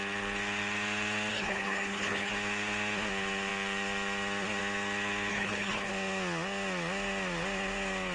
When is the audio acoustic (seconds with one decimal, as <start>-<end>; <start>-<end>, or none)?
0.0-1.3; 2.3-5.3; 5.9-8.1